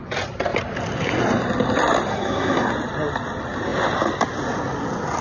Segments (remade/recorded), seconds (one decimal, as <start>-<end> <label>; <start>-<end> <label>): 0.0-2.1 recorded; 2.1-2.7 remade; 2.7-5.2 recorded